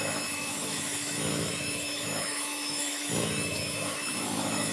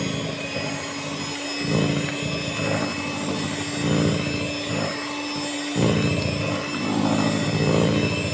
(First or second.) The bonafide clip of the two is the second